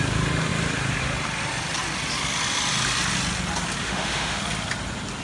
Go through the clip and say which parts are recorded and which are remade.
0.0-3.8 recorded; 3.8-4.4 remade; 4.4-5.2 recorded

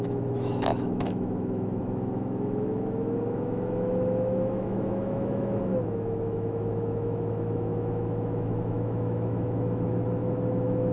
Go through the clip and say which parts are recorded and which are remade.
0.0-10.9 remade

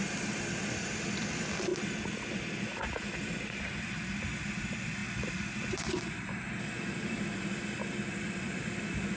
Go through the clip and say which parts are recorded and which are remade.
0.0-1.7 remade; 1.7-3.6 recorded; 3.6-9.2 remade